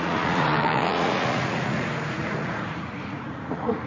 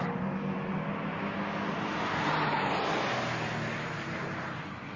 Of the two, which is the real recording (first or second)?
second